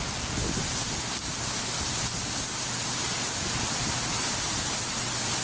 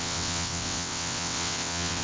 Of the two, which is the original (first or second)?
first